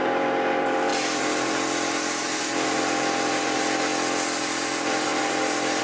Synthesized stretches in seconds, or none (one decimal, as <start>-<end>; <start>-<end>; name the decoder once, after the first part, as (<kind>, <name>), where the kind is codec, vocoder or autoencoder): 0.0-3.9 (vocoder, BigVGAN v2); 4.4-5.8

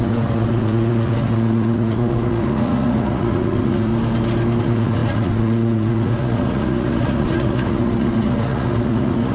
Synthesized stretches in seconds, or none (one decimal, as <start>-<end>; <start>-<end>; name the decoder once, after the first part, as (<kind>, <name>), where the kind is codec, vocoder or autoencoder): 0.0-3.9 (vocoder, Vocos); 4.6-9.3

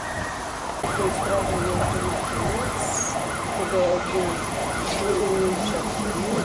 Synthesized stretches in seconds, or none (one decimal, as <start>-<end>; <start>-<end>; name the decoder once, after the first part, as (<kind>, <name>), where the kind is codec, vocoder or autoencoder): 4.6-5.3 (vocoder, Vocos)

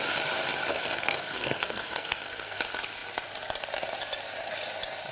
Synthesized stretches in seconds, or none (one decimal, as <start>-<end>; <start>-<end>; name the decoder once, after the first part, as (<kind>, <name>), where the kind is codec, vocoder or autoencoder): 0.7-2.6 (codec, SNAC)